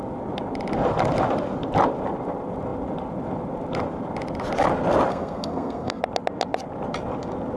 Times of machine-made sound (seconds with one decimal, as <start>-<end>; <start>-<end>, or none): 5.1-6.0